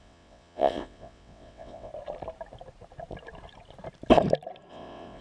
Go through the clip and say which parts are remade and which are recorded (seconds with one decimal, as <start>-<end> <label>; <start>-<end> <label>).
0.0-1.9 remade; 1.9-4.7 recorded; 4.7-5.2 remade